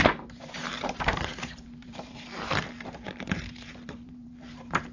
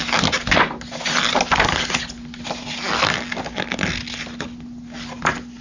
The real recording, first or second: second